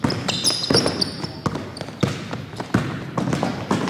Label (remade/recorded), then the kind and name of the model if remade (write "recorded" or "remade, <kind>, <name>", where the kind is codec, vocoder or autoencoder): recorded